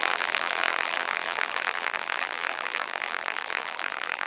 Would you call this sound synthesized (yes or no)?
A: yes